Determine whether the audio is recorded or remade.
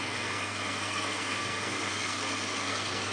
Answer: remade